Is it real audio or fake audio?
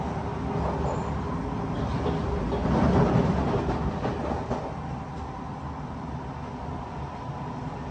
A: real